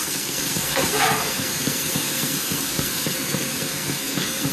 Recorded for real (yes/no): no